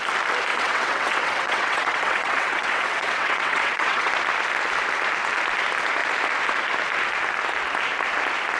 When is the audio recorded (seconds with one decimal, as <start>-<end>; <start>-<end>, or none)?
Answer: 0.0-0.5; 4.1-8.6